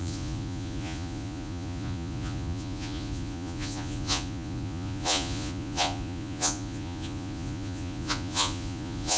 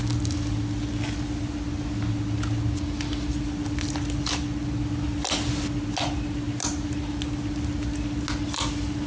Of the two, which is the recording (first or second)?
second